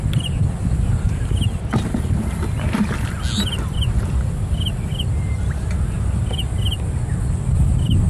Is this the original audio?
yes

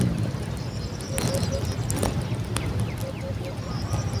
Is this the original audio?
yes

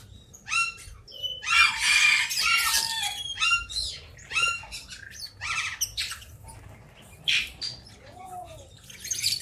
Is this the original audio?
yes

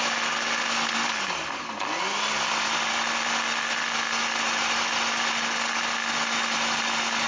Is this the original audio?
yes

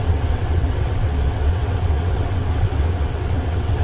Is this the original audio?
no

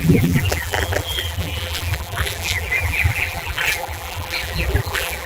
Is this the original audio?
no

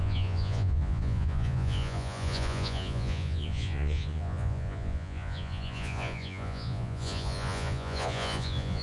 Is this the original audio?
no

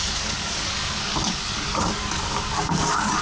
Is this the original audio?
no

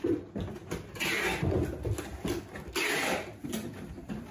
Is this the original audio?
yes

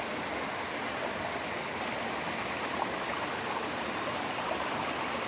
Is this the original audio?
yes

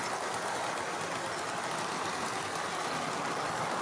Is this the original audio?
yes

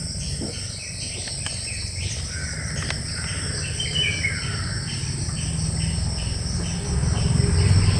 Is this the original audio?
yes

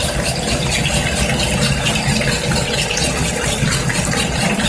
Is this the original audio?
yes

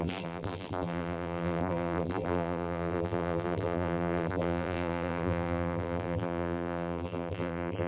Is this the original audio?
no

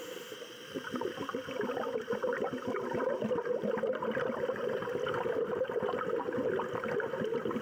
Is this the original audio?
no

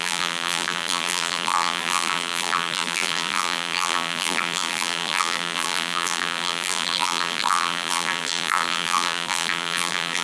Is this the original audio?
no